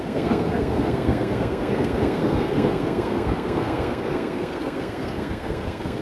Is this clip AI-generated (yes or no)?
yes